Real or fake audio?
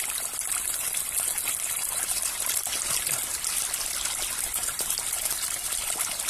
real